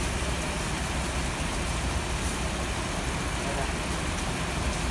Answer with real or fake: real